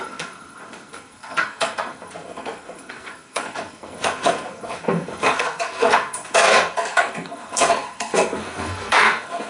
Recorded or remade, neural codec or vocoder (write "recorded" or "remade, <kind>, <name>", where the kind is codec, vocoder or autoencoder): remade, codec, SNAC